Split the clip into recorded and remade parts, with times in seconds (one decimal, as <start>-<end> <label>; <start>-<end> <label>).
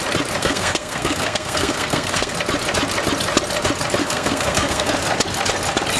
0.0-0.4 recorded; 0.4-2.3 remade; 2.3-4.0 recorded; 4.0-4.9 remade; 4.9-6.0 recorded